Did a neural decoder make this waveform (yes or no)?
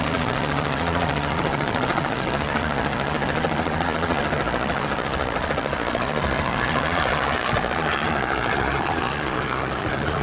yes